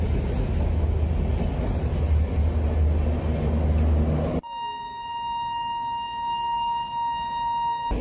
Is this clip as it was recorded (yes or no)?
yes